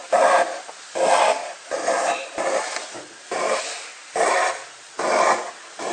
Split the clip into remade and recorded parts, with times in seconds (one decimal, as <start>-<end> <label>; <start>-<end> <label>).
0.0-1.4 recorded; 1.4-3.6 remade; 3.6-5.9 recorded